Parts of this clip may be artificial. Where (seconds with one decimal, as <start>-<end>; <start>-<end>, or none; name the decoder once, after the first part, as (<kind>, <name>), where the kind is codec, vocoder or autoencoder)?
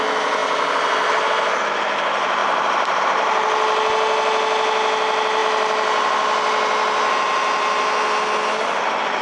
none